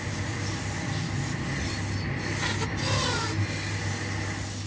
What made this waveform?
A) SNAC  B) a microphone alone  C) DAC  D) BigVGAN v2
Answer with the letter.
B